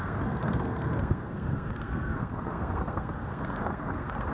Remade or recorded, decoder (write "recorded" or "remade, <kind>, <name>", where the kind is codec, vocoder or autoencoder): remade, codec, SNAC